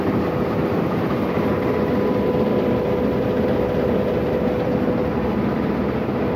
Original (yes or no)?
yes